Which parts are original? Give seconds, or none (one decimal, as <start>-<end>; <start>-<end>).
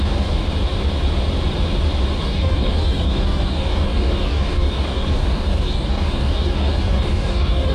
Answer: 0.4-2.2